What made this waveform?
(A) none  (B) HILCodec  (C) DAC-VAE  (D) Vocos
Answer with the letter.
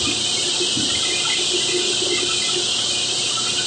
A